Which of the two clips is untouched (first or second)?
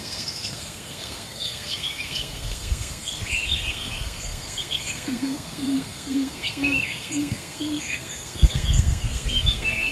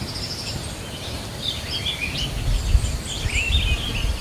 second